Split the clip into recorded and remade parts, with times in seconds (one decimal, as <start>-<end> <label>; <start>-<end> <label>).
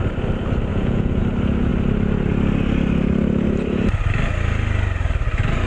0.0-0.7 recorded; 0.7-1.2 remade; 1.2-5.7 recorded